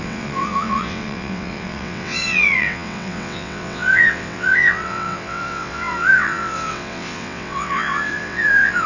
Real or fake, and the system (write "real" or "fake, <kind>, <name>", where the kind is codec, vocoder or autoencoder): fake, vocoder, WaveNeXt